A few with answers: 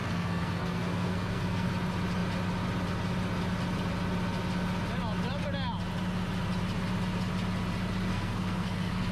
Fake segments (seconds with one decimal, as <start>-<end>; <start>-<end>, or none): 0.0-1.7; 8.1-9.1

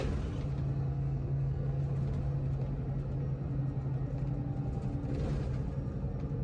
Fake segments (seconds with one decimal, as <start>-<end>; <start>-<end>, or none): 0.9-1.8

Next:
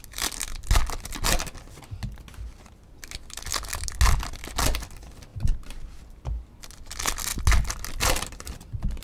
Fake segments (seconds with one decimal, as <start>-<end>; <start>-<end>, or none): none